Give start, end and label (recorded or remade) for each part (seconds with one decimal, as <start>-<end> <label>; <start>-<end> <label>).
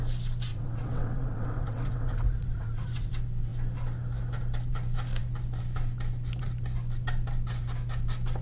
0.0-0.5 recorded; 0.5-3.1 remade; 3.1-8.4 recorded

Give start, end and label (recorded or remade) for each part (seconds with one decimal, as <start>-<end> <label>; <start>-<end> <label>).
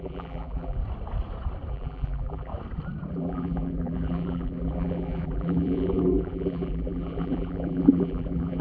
0.0-0.8 remade; 0.8-1.7 recorded; 1.7-2.5 remade; 2.5-3.1 recorded; 3.1-8.6 remade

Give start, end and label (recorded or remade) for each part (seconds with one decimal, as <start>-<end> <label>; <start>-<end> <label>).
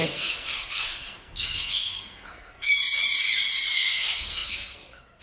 0.0-2.8 remade; 2.8-3.7 recorded; 3.7-5.2 remade